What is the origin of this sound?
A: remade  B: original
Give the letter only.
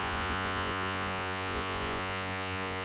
A